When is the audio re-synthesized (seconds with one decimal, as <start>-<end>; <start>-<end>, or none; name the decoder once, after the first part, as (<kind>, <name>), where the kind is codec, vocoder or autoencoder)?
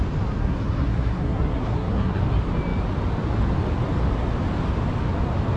0.4-2.2 (codec, SNAC)